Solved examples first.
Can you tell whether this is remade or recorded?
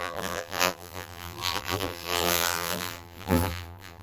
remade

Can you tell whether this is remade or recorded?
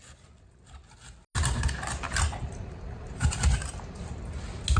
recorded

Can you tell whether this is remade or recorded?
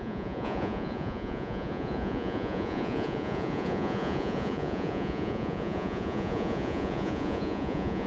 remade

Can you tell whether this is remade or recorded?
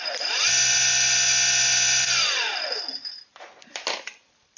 recorded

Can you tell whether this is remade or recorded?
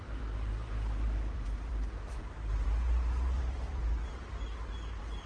remade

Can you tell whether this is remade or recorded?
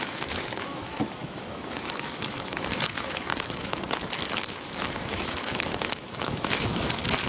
remade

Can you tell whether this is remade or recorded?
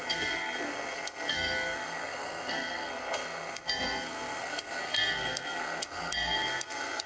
remade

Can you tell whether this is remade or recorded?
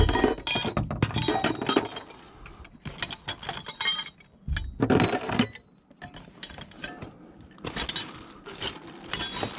recorded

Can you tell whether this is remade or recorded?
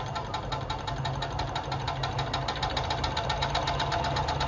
recorded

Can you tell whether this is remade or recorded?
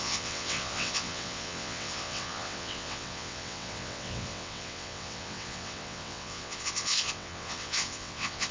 remade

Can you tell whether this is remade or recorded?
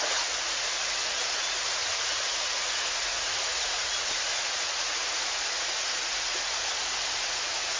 remade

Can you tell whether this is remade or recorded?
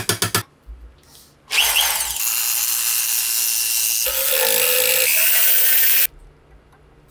recorded